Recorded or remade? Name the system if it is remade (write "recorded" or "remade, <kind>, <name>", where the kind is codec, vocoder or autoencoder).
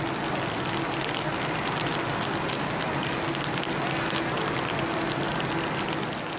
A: recorded